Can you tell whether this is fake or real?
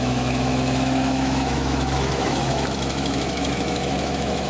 fake